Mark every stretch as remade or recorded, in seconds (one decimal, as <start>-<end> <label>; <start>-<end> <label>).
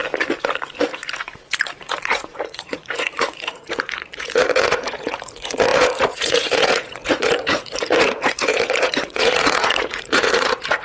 0.0-1.2 recorded; 1.2-10.8 remade